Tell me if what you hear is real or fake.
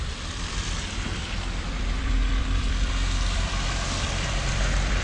fake